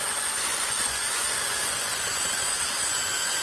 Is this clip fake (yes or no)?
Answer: yes